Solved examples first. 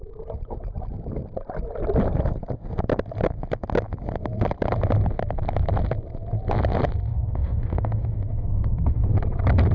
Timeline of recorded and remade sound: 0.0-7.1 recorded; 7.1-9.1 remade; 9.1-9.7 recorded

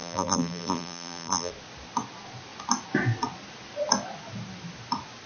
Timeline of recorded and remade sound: 0.0-1.5 remade; 1.5-5.3 recorded

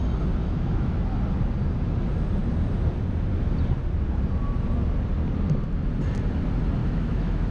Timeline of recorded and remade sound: 0.0-0.4 recorded; 0.4-1.1 remade; 1.1-6.8 recorded; 6.8-7.5 remade

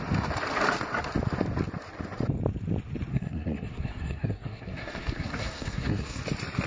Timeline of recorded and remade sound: 0.0-3.1 recorded; 3.1-6.2 remade; 6.2-6.7 recorded

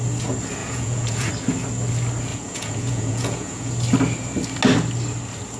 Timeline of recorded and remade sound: 0.0-0.6 recorded; 0.6-1.3 remade; 1.3-2.3 recorded; 2.3-3.7 remade; 3.7-5.6 recorded

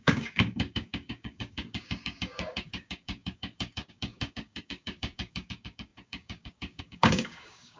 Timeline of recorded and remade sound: 0.0-7.8 remade

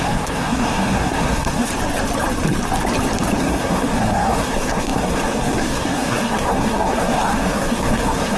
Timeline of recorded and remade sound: 0.0-1.7 remade; 1.7-3.4 recorded; 3.4-8.4 remade